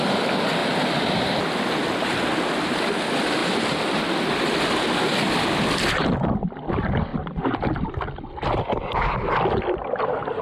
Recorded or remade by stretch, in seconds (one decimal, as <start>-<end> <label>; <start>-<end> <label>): 0.0-7.1 recorded; 7.1-7.7 remade; 7.7-10.4 recorded